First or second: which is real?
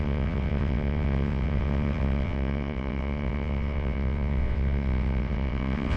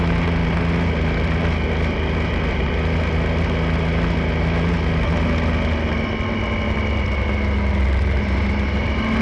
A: second